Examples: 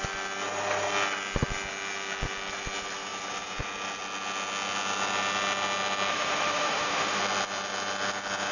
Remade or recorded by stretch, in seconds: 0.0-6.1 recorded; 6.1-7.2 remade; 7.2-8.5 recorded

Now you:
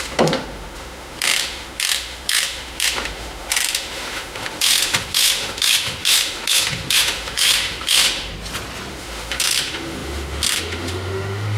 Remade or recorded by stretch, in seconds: 0.0-8.3 remade; 8.3-8.9 recorded; 8.9-11.6 remade